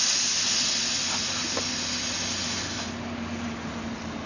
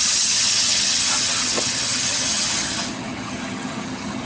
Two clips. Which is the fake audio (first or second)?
second